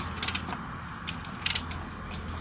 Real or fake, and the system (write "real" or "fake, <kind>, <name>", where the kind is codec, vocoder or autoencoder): real